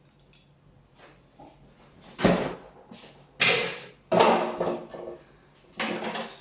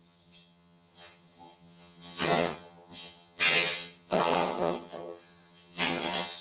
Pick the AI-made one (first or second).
second